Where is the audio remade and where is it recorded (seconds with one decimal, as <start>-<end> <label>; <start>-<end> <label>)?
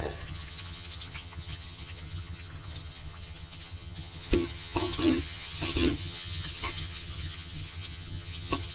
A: 0.0-8.7 remade